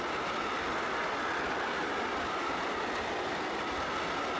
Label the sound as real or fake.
real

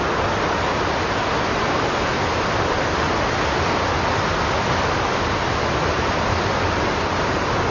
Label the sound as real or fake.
real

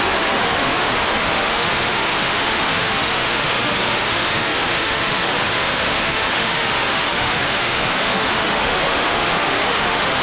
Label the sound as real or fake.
fake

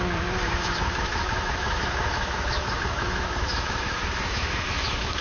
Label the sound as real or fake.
fake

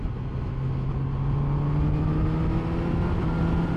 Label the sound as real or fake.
real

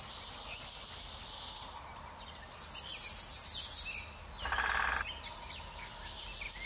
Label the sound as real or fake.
real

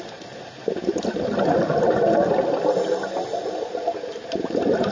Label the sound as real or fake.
real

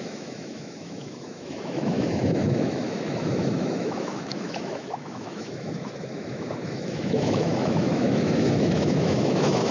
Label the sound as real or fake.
fake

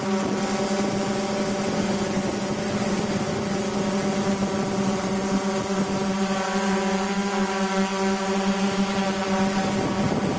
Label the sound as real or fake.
real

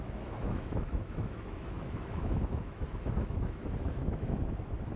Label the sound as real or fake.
fake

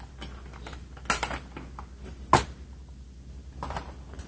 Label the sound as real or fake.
real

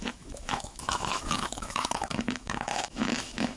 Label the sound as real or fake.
fake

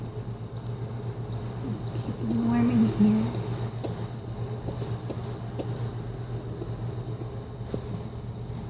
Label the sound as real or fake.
real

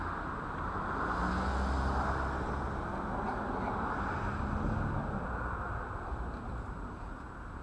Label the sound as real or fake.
real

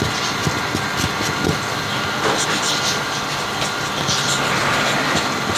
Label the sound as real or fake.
real